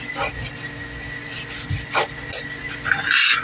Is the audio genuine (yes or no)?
yes